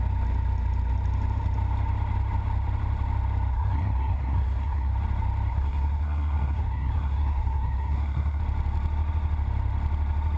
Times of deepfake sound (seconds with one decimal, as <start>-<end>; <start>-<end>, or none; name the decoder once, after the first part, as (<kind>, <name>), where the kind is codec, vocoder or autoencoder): 3.5-4.9 (codec, SNAC); 5.5-8.4